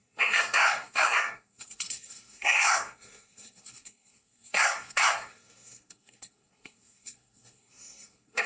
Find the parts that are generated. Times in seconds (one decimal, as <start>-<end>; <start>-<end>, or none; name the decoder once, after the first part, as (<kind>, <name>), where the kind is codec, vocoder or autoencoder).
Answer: 0.0-8.5 (codec, SNAC)